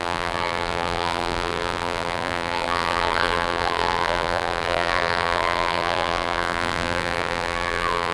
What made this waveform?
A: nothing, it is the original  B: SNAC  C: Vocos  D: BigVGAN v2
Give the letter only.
D